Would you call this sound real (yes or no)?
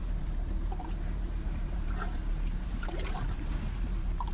no